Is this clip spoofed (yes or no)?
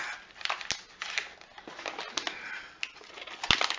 no